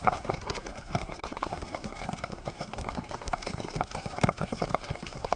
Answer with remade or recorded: remade